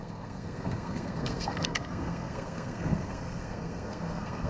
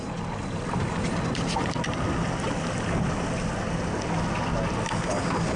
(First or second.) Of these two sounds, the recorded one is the second